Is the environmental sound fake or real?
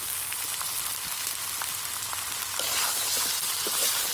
real